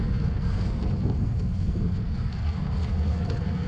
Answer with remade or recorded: remade